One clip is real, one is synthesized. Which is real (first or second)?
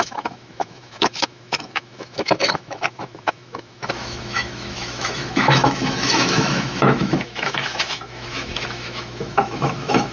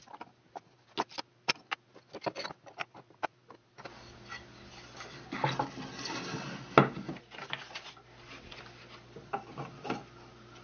second